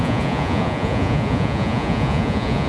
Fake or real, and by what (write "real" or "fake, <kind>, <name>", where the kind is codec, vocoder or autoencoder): fake, vocoder, Vocos